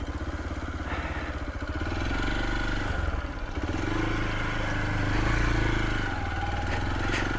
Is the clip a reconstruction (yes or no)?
no